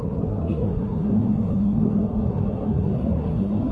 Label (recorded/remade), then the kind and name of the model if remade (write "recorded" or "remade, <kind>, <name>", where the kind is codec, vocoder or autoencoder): remade, codec, SNAC